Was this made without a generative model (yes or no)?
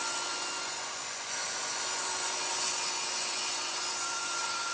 no